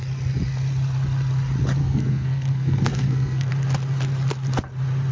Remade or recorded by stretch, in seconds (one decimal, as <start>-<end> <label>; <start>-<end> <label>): 0.0-1.8 recorded; 1.8-3.5 remade; 3.5-5.1 recorded